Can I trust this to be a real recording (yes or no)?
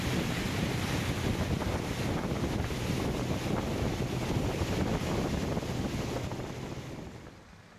yes